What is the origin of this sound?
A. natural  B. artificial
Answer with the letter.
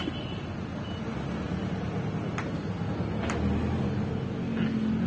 A